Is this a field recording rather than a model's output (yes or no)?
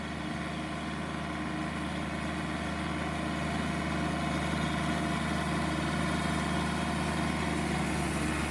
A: yes